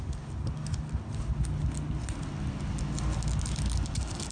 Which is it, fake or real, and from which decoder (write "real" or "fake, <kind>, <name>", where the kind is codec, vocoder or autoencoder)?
real